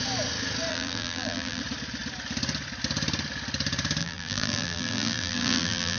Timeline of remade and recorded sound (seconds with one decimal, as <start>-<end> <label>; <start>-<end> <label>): 0.0-0.7 recorded; 0.7-1.6 remade; 1.6-4.0 recorded; 4.0-6.0 remade